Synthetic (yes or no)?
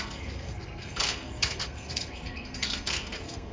yes